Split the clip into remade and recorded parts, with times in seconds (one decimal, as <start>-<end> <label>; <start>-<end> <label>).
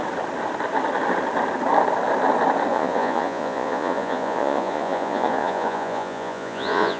0.0-2.7 recorded; 2.7-7.0 remade